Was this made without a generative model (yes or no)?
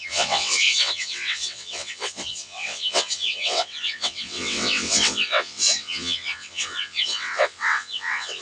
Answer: no